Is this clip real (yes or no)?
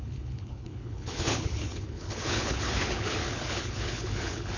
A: no